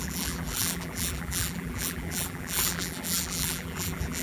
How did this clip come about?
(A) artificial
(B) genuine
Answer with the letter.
A